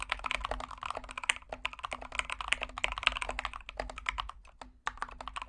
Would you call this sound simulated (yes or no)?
no